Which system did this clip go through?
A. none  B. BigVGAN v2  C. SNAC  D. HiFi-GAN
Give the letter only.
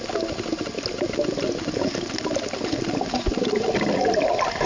A